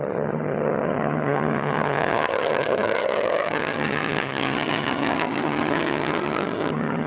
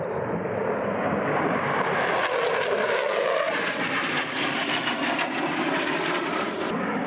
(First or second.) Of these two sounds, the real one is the second